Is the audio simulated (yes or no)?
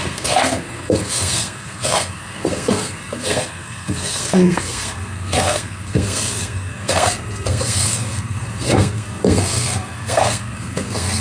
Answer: yes